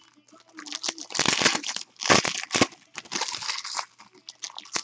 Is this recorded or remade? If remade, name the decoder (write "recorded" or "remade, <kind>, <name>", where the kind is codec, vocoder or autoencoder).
recorded